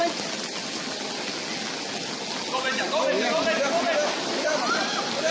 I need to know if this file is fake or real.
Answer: real